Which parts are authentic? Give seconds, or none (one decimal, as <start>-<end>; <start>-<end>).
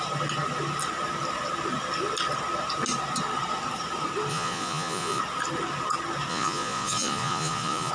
0.0-4.3; 5.2-6.3